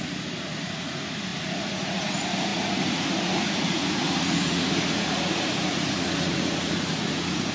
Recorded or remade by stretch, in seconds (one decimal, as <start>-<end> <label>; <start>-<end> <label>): 0.0-7.5 remade